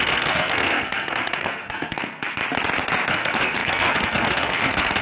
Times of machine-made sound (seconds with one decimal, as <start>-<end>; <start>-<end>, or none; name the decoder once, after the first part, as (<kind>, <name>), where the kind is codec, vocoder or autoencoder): 0.0-2.4 (codec, SNAC); 3.1-5.0